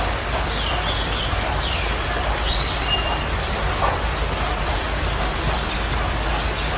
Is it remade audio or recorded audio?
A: remade